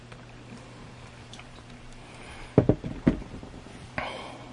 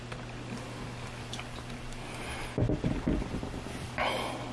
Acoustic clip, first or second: second